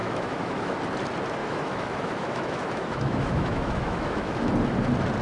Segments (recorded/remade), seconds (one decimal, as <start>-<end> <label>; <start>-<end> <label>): 0.0-0.8 remade; 0.8-1.4 recorded; 1.4-4.5 remade; 4.5-5.2 recorded